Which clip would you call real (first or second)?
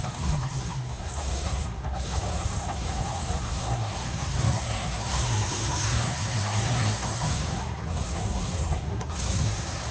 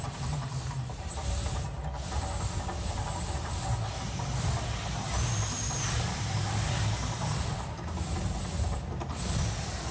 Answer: second